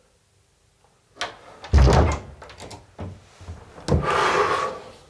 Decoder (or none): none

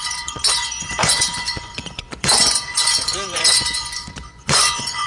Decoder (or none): vocoder, Vocos